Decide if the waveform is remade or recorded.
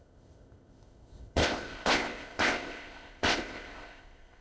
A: remade